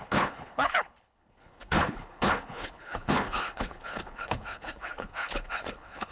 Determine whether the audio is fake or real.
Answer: fake